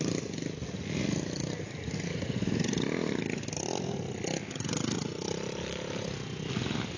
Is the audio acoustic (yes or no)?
yes